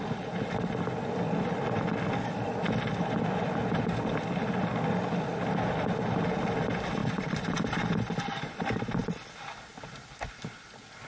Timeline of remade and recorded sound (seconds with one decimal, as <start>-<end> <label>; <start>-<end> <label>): 0.0-7.0 recorded; 7.0-7.9 remade; 7.9-11.1 recorded